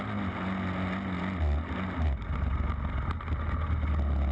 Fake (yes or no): no